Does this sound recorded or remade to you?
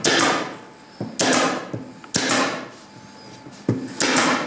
recorded